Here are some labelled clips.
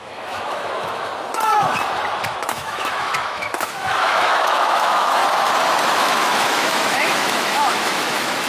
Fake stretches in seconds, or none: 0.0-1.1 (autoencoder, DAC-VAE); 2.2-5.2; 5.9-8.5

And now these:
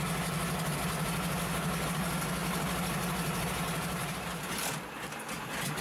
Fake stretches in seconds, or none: none

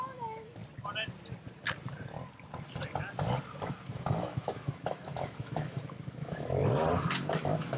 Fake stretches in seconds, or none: 0.0-0.6 (autoencoder, DAC-VAE); 3.9-6.6; 7.3-7.8

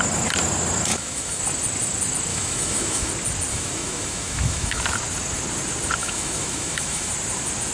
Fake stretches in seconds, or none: 0.9-1.4 (autoencoder, DAC-VAE); 2.3-3.1; 3.5-4.8; 6.0-7.1